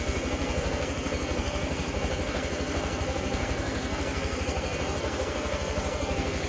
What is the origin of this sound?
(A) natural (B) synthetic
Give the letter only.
B